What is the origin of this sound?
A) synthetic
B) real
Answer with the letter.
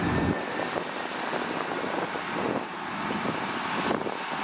B